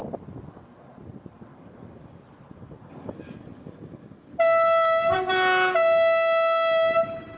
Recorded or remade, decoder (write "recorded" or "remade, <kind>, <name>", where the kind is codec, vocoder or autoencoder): recorded